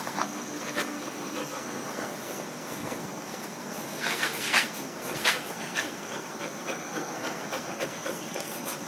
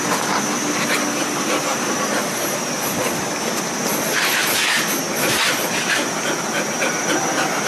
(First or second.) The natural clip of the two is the second